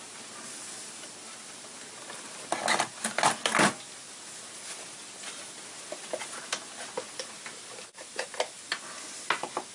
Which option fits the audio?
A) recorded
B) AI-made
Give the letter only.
A